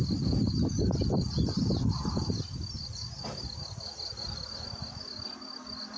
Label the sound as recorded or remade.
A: recorded